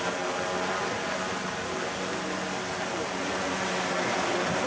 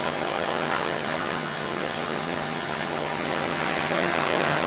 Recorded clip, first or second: first